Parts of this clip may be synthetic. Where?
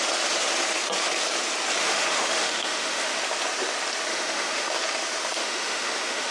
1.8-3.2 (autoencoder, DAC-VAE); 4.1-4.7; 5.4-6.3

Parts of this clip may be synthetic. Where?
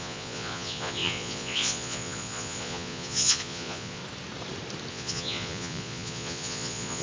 0.0-4.0 (vocoder, Vocos); 4.9-7.0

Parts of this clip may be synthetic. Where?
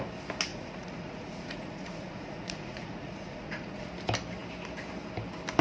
0.5-3.9 (vocoder, Vocos)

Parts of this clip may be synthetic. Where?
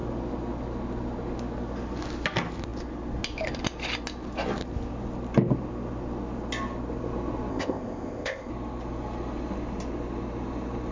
7.5-8.5 (codec, ZipCodec)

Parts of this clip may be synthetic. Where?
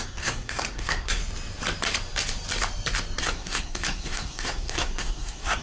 0.0-1.2 (codec, SNAC); 3.2-5.6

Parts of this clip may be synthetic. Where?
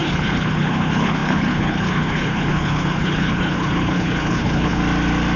0.0-4.8 (codec, HILCodec)